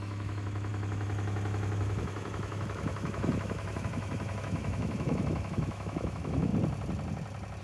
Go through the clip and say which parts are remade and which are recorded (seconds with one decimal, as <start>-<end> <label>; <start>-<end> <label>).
0.0-6.5 remade; 6.5-7.6 recorded

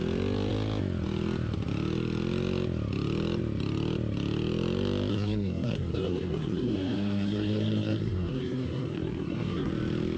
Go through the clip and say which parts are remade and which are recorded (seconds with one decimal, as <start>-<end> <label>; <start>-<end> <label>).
0.0-5.1 recorded; 5.1-9.7 remade; 9.7-10.2 recorded

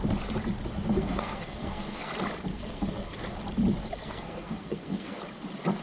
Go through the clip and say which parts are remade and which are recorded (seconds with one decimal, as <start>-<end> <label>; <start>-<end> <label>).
0.0-0.9 recorded; 0.9-2.1 remade; 2.1-2.5 recorded; 2.5-3.2 remade; 3.2-4.0 recorded; 4.0-5.2 remade; 5.2-5.8 recorded

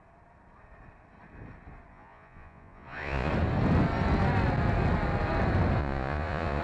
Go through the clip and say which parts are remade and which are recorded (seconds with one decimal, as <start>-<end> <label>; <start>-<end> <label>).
0.0-1.9 recorded; 1.9-3.3 remade; 3.3-5.8 recorded; 5.8-6.6 remade

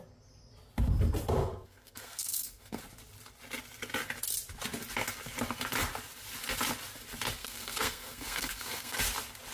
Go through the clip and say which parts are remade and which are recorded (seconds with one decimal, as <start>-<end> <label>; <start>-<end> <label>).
0.0-1.4 recorded; 1.4-2.8 remade; 2.8-7.4 recorded; 7.4-9.0 remade; 9.0-9.5 recorded

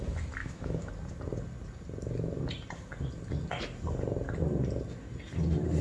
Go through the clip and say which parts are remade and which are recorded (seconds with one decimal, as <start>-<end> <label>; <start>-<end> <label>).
0.0-0.4 recorded; 0.4-0.9 remade; 0.9-5.8 recorded